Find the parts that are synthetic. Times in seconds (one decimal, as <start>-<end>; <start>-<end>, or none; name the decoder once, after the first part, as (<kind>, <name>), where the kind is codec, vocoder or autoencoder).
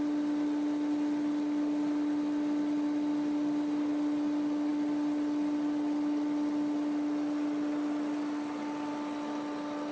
none